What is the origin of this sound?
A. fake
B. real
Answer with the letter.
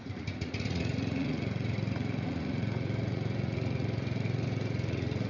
A